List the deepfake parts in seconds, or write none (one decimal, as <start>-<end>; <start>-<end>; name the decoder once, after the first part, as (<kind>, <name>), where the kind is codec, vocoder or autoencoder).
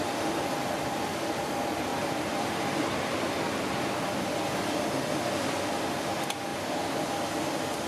1.9-2.5 (vocoder, BigVGAN v2); 6.5-7.1